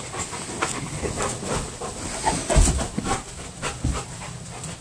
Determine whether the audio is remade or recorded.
recorded